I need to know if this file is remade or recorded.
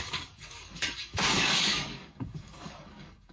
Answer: remade